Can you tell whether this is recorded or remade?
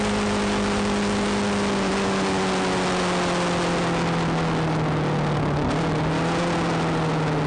recorded